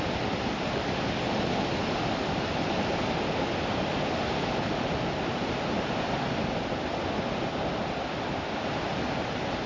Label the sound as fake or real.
real